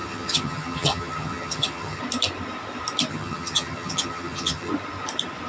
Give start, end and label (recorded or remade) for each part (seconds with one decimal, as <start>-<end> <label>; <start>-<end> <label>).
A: 0.0-2.0 remade; 2.0-3.1 recorded; 3.1-4.7 remade; 4.7-5.5 recorded